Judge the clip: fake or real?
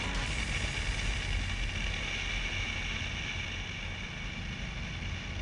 real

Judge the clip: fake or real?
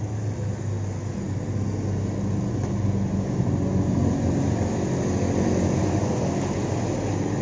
real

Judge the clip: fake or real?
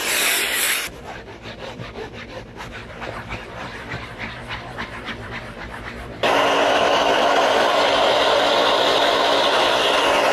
fake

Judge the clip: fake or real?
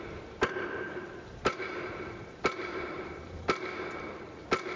fake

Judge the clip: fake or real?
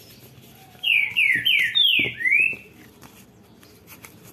fake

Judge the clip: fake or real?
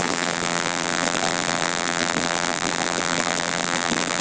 fake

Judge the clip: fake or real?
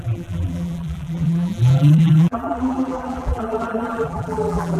fake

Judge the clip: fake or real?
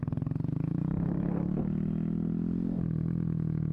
real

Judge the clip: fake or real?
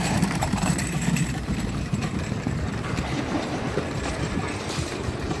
fake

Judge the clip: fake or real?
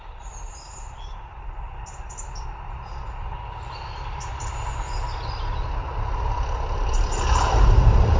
fake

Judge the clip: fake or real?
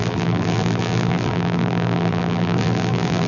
fake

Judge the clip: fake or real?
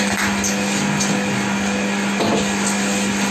real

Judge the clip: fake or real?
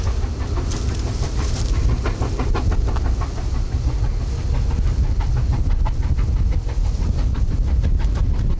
real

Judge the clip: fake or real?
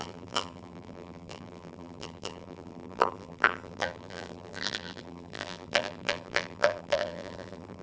fake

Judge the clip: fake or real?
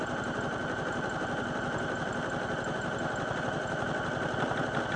real